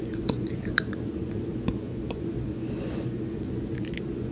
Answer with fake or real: fake